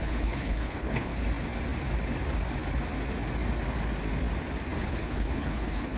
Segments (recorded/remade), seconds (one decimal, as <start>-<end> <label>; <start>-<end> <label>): 0.0-1.2 remade; 1.2-4.8 recorded; 4.8-6.0 remade